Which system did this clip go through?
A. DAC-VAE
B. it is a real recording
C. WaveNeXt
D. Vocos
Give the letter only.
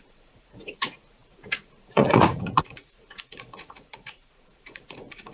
D